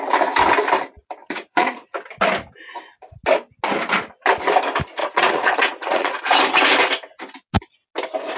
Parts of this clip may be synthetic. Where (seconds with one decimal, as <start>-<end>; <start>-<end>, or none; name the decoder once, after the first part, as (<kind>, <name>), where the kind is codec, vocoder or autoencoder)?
1.2-2.0 (vocoder, Vocos); 5.0-6.2